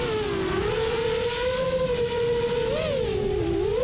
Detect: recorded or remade recorded